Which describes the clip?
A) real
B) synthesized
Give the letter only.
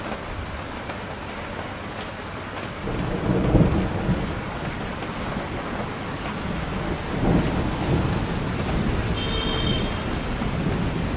A